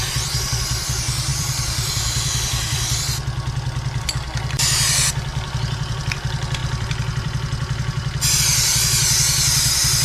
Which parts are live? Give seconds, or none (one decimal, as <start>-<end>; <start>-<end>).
0.0-1.3; 3.0-5.3; 6.1-6.6; 8.4-10.0